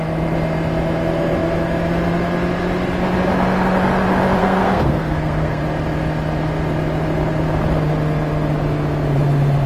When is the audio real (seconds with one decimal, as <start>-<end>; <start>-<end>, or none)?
0.0-4.4; 5.6-9.7